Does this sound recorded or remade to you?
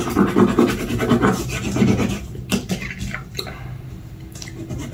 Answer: recorded